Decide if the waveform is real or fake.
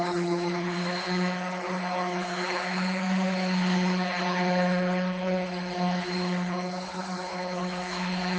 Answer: fake